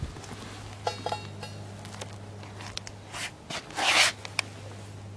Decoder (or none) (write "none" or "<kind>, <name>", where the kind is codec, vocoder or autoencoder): none